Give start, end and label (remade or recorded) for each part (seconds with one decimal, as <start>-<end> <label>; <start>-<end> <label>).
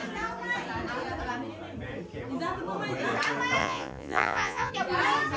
0.0-3.6 recorded; 3.6-4.7 remade; 4.7-5.4 recorded